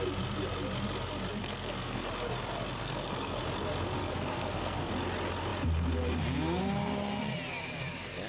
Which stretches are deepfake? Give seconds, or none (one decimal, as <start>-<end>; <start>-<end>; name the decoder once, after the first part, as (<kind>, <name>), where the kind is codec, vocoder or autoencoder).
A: 1.4-2.1 (codec, SNAC); 2.8-3.4; 4.0-4.9

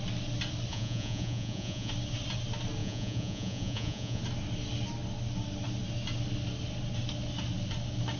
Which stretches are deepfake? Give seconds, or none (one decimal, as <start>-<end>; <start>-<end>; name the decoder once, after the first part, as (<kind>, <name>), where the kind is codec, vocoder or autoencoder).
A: 0.7-1.9 (vocoder, Vocos); 2.8-4.2

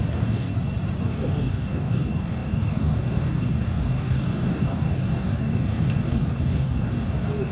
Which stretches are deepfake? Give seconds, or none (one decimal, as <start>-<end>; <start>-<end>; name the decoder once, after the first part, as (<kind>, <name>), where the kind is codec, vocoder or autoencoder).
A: 0.0-0.5 (codec, DAC); 1.0-7.5

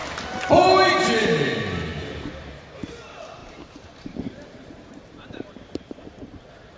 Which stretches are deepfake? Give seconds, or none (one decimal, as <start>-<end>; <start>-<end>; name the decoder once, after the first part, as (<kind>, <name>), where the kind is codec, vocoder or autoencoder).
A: 3.4-6.8 (vocoder, BigVGAN v2)

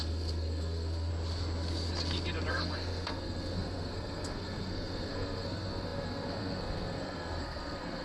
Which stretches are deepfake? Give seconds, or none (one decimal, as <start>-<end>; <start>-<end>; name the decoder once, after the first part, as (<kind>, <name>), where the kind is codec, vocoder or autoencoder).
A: 0.0-1.1 (codec, SNAC); 2.5-8.0

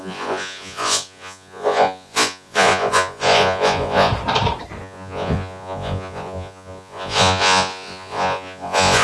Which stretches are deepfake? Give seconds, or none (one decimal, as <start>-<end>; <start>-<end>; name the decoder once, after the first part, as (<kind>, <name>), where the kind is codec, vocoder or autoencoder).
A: 0.0-4.1 (vocoder, Vocos); 4.8-9.0

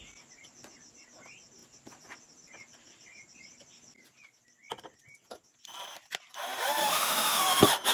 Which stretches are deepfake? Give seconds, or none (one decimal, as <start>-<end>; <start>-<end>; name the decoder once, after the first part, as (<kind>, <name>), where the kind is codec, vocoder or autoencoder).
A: 6.8-7.4 (autoencoder, DAC-VAE)